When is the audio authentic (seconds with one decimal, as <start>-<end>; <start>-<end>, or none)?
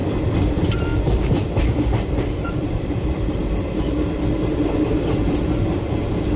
0.0-0.5; 3.4-5.2